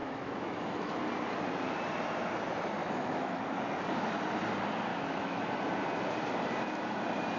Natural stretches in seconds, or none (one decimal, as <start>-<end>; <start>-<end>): 1.0-2.8; 3.4-4.9; 5.4-7.4

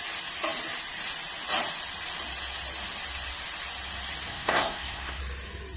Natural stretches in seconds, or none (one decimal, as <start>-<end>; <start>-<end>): 0.0-4.3; 5.2-5.8

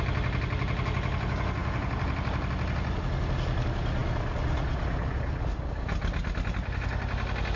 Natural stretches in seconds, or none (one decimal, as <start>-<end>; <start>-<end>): 0.0-7.6